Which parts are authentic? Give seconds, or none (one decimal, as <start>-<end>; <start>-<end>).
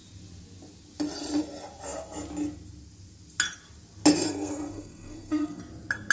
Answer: 0.0-4.2; 5.6-6.1